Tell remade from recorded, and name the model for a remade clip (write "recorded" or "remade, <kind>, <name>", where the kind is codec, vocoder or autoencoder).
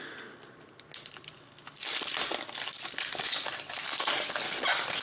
recorded